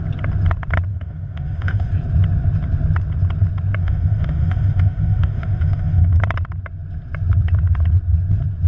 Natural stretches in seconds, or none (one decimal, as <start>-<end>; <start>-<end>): 0.0-0.9; 1.9-3.8; 6.2-8.7